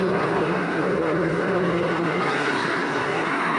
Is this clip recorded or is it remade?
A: remade